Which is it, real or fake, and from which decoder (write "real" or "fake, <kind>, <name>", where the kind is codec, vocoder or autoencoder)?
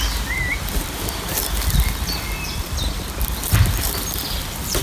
real